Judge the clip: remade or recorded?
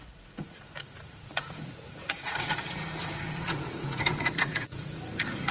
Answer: remade